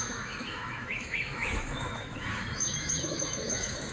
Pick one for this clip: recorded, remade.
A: remade